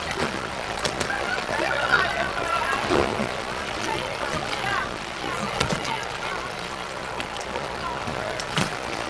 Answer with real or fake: fake